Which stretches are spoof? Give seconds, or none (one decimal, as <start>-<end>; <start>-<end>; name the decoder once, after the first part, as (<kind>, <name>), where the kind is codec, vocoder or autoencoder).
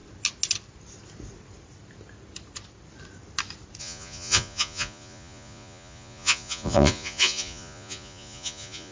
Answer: 3.8-8.9 (vocoder, Vocos)